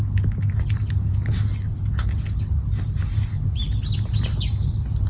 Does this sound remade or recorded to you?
recorded